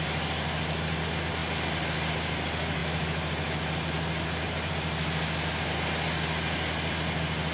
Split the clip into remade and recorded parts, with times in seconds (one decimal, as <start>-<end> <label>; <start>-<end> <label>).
0.0-7.5 recorded